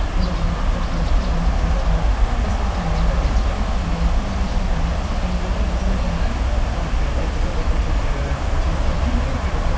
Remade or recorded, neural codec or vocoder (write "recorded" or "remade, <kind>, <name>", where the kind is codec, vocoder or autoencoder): recorded